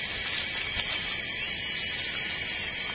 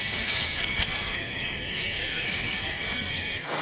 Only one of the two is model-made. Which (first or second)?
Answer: second